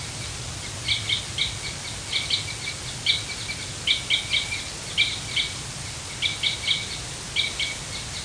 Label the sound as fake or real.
real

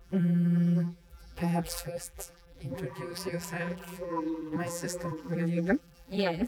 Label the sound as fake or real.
fake